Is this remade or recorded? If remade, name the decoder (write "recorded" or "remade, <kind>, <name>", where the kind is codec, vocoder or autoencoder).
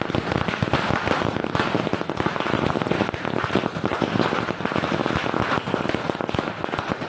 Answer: recorded